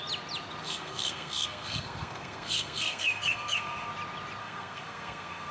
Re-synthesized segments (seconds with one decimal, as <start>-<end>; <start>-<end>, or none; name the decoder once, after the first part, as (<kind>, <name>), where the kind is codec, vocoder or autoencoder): 0.6-3.9 (codec, SNAC); 4.4-5.5